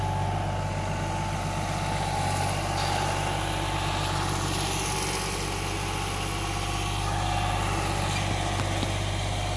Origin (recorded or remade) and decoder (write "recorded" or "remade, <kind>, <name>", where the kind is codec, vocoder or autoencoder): recorded